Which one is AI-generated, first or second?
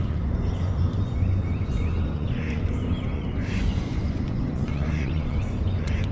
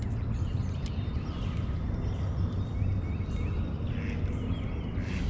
first